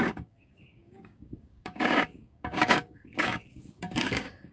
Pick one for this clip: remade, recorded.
remade